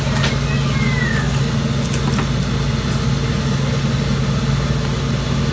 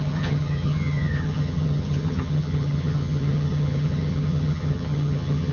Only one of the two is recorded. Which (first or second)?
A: first